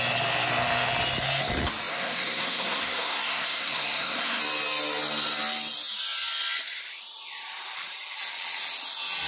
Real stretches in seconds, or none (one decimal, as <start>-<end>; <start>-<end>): 0.0-1.9; 4.4-9.3